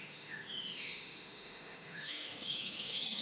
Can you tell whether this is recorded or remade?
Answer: remade